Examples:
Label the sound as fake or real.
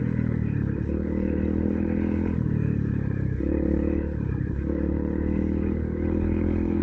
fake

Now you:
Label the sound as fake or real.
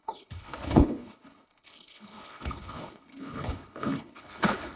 fake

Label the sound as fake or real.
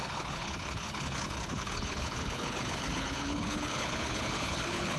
fake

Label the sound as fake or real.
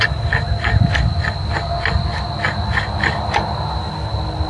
real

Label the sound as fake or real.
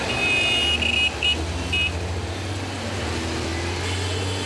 real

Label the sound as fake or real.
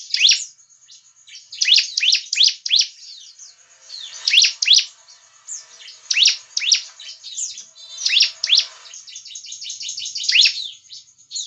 real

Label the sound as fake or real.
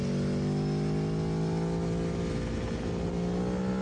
real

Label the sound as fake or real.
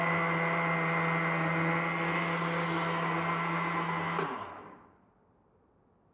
real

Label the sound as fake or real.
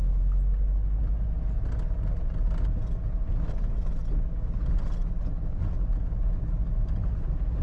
real